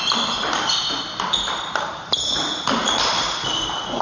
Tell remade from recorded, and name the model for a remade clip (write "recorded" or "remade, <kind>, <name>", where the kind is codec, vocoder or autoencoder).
recorded